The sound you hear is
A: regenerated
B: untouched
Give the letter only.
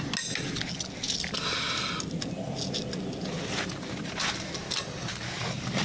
B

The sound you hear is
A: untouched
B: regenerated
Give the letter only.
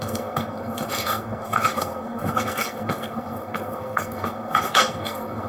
B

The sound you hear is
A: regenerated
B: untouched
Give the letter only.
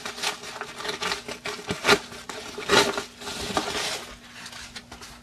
B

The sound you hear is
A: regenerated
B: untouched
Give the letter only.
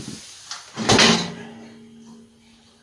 B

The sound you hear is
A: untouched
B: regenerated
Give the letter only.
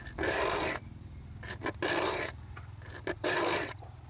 A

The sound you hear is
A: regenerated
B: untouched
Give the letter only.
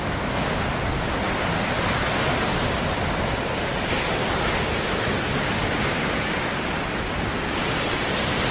B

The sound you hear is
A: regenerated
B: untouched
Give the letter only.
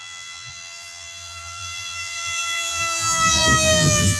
A